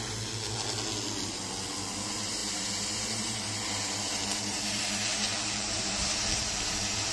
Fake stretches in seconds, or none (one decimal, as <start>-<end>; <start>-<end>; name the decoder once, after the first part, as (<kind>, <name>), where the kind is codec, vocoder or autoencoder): 2.4-7.1 (vocoder, BigVGAN v2)